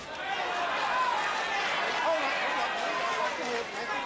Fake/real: real